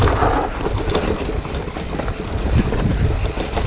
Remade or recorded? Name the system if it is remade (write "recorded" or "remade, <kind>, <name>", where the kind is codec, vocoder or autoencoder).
recorded